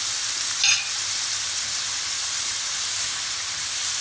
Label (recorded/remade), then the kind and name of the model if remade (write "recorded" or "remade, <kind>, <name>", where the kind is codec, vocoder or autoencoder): recorded